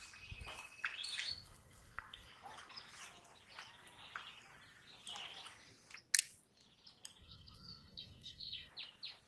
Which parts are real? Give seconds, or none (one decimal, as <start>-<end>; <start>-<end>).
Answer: 0.0-1.3; 2.3-7.2; 8.7-9.3